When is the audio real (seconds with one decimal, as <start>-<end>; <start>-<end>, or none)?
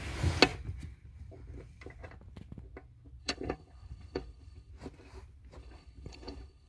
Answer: 0.0-3.2; 4.7-5.6